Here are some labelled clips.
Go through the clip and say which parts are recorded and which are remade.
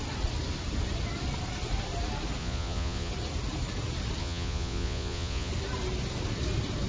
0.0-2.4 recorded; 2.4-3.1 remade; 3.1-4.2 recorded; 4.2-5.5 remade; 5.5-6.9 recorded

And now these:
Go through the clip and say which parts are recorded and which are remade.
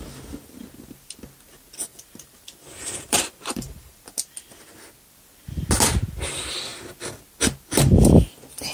0.0-1.9 recorded; 1.9-4.0 remade; 4.0-8.7 recorded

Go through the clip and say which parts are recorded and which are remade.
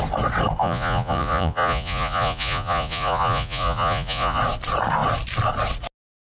0.0-0.6 recorded; 0.6-4.4 remade; 4.4-6.3 recorded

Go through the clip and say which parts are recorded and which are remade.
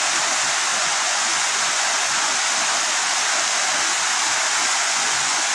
0.0-0.7 recorded; 0.7-2.3 remade; 2.3-4.7 recorded; 4.7-5.5 remade